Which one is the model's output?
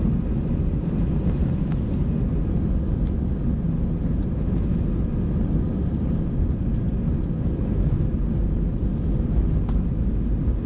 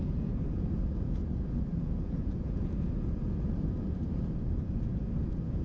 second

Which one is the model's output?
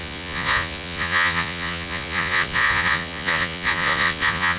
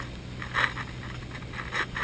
first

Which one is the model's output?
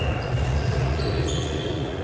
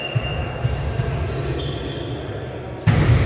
first